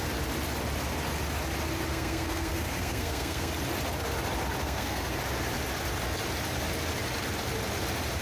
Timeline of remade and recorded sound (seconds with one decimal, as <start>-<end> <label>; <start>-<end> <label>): 0.0-1.9 recorded; 1.9-3.5 remade; 3.5-4.6 recorded; 4.6-5.1 remade; 5.1-8.2 recorded